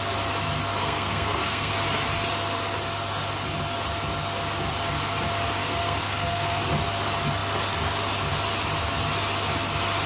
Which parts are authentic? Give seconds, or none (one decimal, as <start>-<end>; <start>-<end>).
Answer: 0.0-0.8; 1.7-5.6; 6.6-10.1